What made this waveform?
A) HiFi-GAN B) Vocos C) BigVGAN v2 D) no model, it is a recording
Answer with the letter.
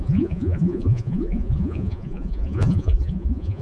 B